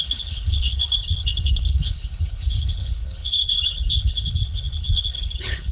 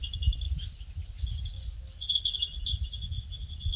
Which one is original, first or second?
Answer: second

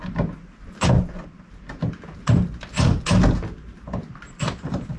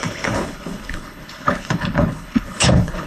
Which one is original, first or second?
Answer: first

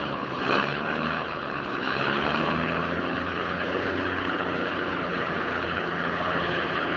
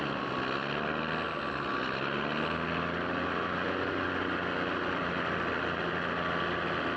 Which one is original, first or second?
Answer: second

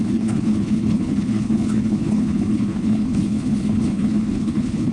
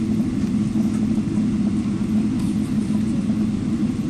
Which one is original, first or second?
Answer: second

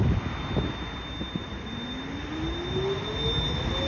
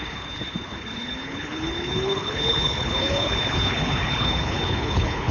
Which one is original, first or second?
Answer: first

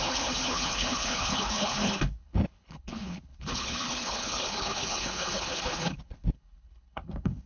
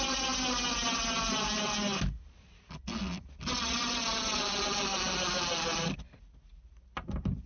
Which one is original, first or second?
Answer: second